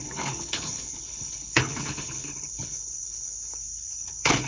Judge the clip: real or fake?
fake